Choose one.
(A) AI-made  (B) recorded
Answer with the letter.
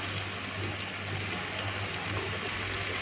B